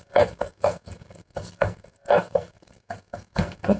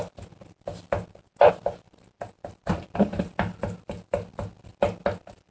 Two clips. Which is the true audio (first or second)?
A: second